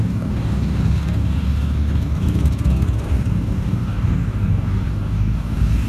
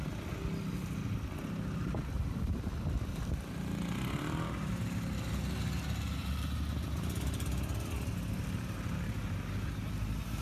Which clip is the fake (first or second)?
first